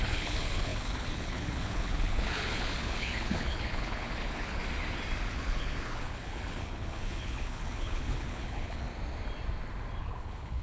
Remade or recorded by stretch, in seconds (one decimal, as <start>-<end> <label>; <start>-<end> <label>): 0.0-4.6 remade; 4.6-5.3 recorded; 5.3-8.9 remade; 8.9-10.0 recorded; 10.0-10.6 remade